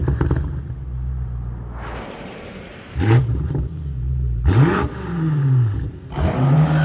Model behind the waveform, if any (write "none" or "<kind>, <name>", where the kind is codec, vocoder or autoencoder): vocoder, BigVGAN v2